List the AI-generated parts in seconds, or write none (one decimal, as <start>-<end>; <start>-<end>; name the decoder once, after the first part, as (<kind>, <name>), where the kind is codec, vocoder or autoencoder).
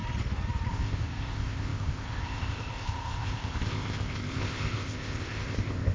0.7-5.9 (codec, ZipCodec)